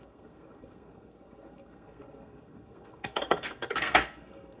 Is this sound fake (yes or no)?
yes